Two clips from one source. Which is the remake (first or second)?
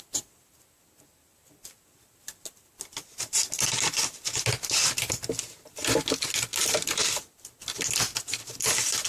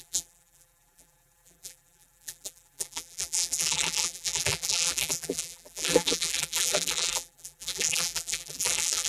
second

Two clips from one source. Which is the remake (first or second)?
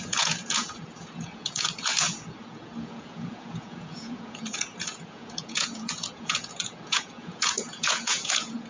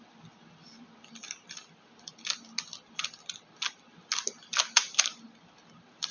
first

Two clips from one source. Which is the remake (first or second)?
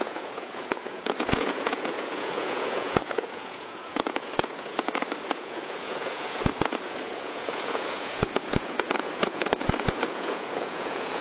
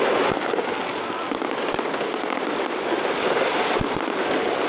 first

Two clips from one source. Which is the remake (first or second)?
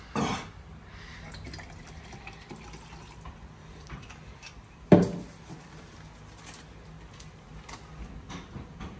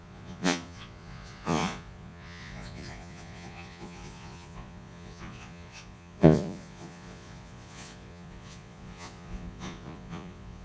second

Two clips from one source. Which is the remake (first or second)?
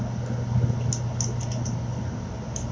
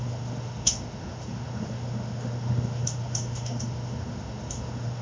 second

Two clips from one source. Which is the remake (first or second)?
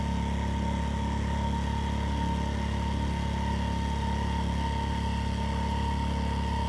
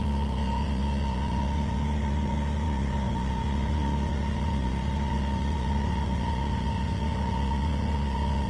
second